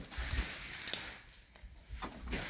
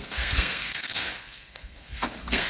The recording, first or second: first